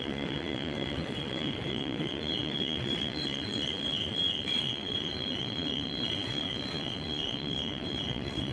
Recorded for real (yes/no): no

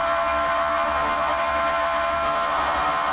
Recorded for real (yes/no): no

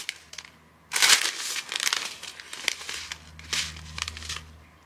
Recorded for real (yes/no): yes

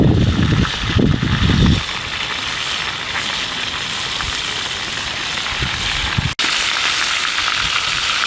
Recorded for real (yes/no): yes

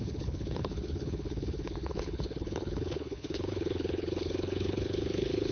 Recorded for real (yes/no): no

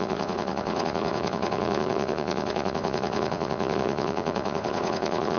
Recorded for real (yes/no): no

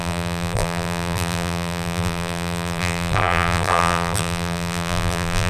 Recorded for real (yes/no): no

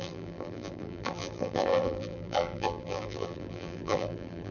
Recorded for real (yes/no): no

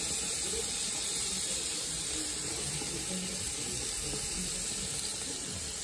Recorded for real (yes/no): yes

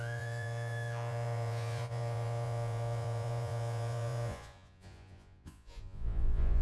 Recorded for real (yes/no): no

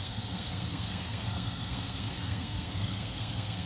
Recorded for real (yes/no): no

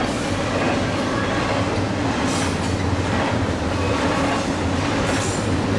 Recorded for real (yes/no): yes